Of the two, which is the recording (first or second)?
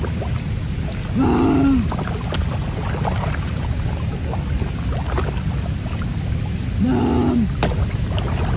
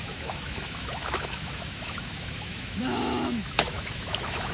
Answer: first